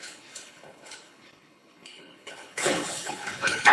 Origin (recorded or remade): remade